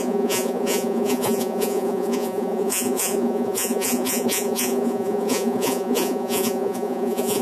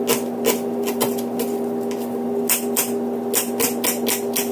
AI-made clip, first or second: first